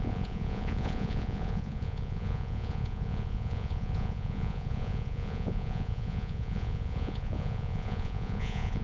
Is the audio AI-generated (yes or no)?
yes